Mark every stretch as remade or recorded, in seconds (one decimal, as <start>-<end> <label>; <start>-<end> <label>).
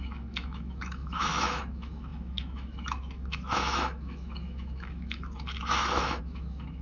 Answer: 0.0-6.8 remade